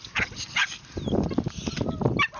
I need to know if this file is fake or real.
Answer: real